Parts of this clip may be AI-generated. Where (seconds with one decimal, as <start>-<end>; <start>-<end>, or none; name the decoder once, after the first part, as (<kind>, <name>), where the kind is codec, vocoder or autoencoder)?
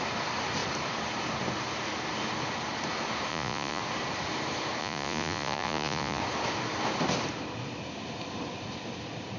3.3-3.8 (vocoder, Vocos); 4.8-6.2